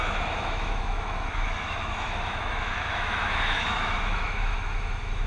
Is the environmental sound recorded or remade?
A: remade